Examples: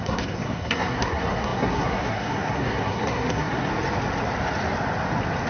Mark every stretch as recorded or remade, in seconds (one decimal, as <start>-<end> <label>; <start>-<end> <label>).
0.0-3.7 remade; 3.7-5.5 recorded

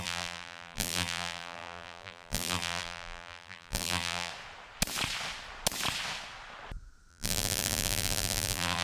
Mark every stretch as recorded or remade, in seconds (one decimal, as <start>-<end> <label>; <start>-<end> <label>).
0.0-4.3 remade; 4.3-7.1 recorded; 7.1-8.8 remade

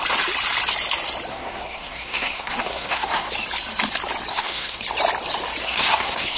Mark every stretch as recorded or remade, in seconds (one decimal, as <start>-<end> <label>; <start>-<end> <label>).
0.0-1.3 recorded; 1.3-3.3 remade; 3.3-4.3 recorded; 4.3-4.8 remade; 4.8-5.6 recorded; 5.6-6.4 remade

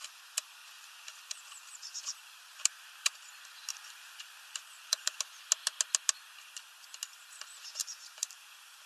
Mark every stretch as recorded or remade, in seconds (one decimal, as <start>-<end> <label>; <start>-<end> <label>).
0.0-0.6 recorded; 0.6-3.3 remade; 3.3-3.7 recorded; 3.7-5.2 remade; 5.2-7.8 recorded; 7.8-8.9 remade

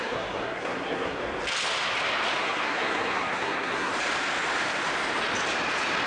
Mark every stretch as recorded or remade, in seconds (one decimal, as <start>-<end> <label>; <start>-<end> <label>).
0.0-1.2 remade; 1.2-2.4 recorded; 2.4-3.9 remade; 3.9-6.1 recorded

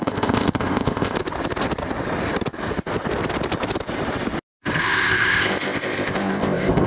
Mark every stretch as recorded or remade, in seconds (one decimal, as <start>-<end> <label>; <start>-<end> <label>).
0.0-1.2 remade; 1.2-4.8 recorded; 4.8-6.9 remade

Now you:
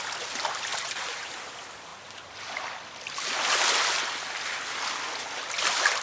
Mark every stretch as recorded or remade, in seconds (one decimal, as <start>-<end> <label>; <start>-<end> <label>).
0.0-0.7 recorded; 0.7-1.4 remade; 1.4-6.0 recorded

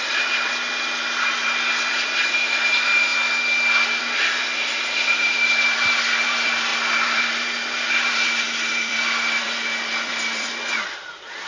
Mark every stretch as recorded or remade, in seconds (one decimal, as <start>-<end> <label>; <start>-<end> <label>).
0.0-3.1 remade; 3.1-4.0 recorded; 4.0-11.5 remade